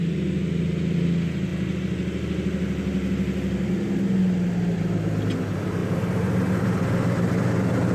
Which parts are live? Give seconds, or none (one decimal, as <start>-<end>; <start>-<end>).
0.0-7.9